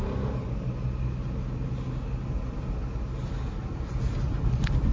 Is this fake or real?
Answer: real